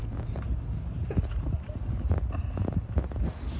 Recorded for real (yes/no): yes